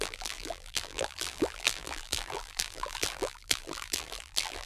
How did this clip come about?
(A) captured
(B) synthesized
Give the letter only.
B